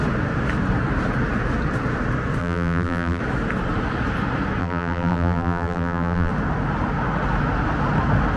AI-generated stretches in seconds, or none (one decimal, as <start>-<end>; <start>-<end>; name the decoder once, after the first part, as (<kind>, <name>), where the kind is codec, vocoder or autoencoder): 2.4-3.2 (vocoder, BigVGAN v2); 4.6-6.3

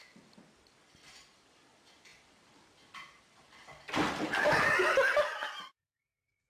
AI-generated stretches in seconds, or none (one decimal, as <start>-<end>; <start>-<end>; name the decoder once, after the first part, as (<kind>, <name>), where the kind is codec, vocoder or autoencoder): 2.1-4.5 (vocoder, BigVGAN v2)